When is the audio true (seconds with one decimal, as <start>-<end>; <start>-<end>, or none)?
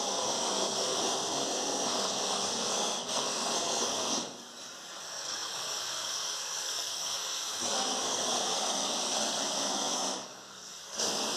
4.5-5.0